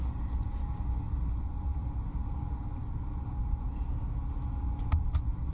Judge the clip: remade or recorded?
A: recorded